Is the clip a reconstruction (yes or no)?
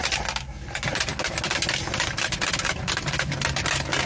no